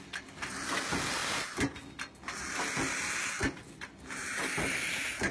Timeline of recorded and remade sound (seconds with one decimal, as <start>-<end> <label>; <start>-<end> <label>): 0.0-5.3 recorded